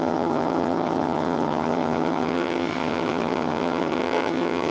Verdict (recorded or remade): remade